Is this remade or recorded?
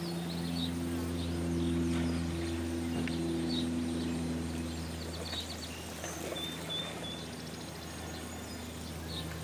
recorded